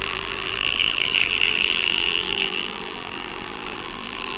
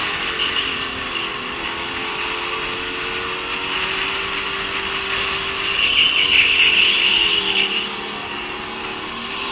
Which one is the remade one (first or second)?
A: first